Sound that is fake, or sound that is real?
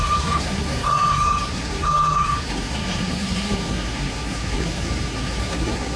fake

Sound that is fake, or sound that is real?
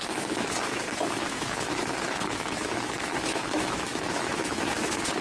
fake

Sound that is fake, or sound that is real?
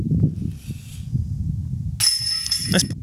real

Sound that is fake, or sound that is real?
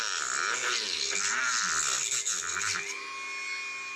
real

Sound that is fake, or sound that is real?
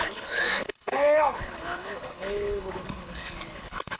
fake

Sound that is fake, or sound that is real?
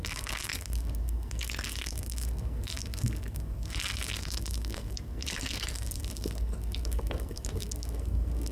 fake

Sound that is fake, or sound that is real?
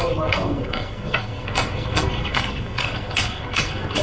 fake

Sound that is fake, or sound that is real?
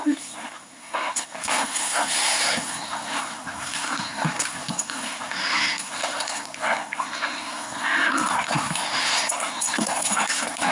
fake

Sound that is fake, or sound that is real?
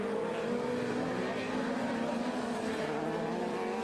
real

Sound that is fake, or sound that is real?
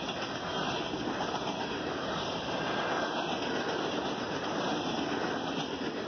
real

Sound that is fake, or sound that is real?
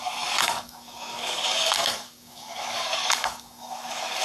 fake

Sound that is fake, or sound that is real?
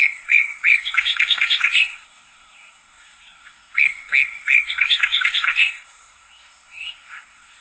fake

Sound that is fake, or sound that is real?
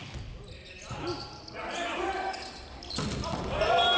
real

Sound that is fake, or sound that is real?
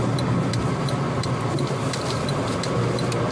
real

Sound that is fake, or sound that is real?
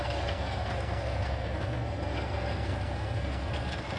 fake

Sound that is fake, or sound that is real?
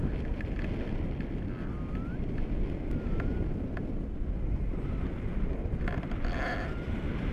real